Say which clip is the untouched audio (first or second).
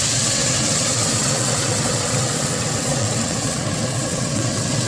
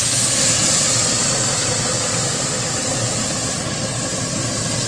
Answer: second